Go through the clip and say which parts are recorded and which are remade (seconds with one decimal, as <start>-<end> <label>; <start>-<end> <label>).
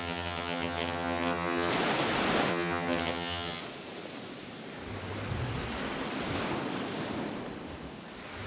0.0-1.7 remade; 1.7-2.5 recorded; 2.5-3.6 remade; 3.6-8.5 recorded